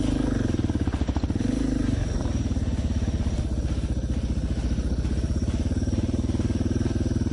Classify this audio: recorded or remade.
recorded